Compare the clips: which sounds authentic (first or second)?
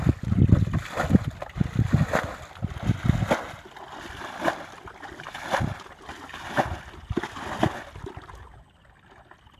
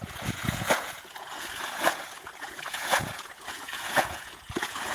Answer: first